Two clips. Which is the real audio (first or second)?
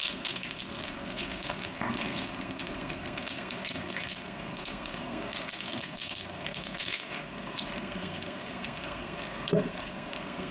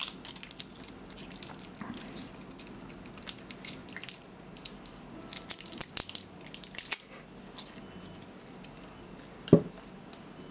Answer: second